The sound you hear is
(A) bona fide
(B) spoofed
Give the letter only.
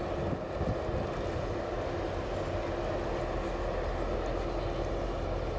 A